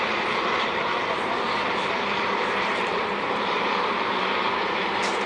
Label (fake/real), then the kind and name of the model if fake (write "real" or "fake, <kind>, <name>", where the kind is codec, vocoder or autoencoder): fake, vocoder, BigVGAN v2